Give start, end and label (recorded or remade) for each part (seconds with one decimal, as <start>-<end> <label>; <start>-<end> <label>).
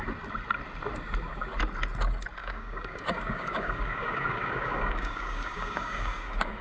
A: 0.0-2.4 recorded; 2.4-6.6 remade